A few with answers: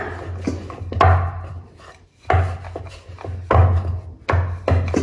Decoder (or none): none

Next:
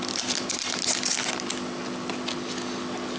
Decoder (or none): none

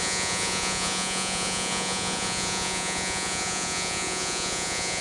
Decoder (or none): vocoder, Vocos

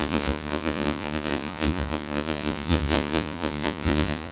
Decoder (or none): vocoder, Vocos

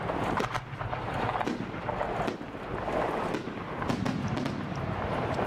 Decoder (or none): vocoder, BigVGAN v2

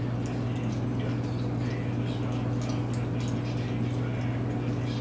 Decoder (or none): none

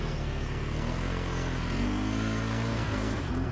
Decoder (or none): codec, SNAC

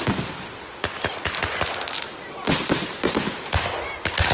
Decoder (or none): none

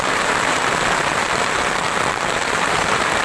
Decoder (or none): vocoder, BigVGAN v2